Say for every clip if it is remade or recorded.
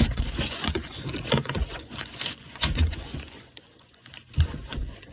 remade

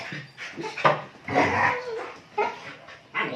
recorded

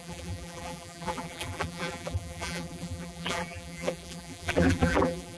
remade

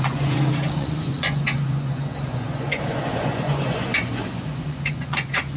remade